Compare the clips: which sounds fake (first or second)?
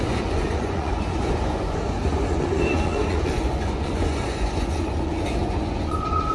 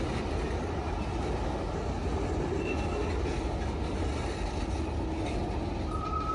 first